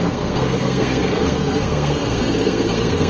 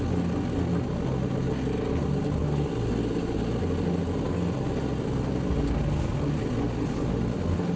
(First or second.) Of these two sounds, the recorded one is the second